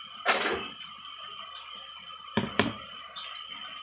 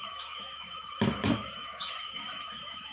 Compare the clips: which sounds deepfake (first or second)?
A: second